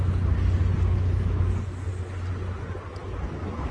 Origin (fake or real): real